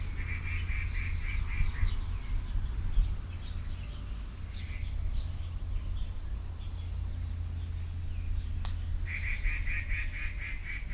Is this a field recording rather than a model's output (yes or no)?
yes